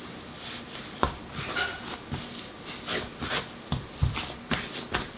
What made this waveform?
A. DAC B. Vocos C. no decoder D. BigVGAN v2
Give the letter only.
C